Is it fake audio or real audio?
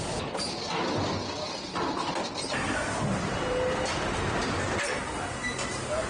real